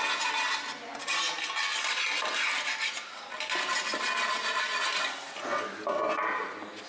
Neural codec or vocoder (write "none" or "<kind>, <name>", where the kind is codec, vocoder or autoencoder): none